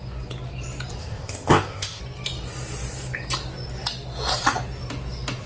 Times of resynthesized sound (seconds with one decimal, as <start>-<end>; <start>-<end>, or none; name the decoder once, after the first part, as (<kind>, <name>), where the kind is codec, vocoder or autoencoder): 1.0-2.0 (codec, ZipCodec)